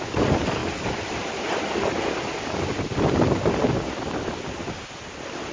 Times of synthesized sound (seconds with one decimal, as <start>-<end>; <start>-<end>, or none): none